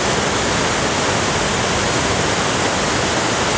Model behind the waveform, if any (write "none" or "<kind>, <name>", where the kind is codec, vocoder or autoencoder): none